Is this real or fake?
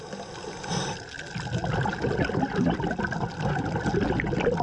real